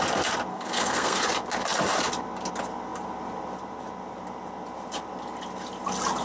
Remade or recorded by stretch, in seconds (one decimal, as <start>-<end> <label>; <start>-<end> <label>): 0.0-0.5 recorded; 0.5-1.2 remade; 1.2-6.2 recorded